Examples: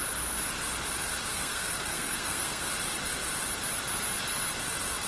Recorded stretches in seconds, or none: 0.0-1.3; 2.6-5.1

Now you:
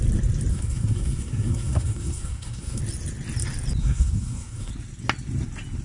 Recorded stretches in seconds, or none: 0.0-0.5; 2.8-3.8; 4.7-5.8

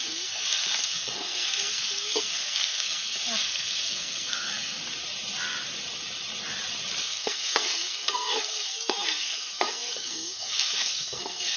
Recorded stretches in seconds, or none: 4.8-7.0

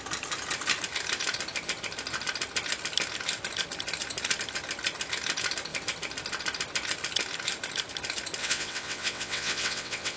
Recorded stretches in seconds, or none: 0.0-8.4

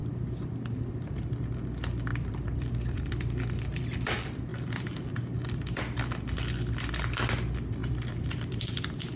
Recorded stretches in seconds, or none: 0.0-2.1; 3.1-7.8

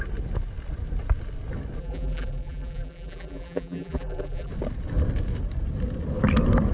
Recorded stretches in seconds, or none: 0.0-1.8; 4.5-6.7

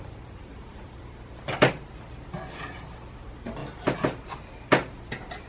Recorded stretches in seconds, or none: 0.0-0.5; 1.7-5.5

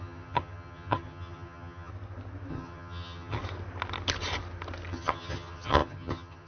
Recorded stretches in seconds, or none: 1.9-2.5; 3.4-4.9